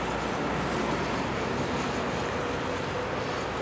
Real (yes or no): yes